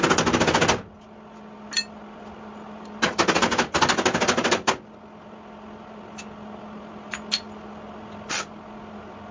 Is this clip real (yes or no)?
yes